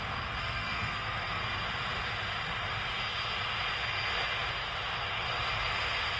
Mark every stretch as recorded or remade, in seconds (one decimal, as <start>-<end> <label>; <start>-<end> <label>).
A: 0.0-0.4 recorded; 0.4-1.4 remade; 1.4-6.2 recorded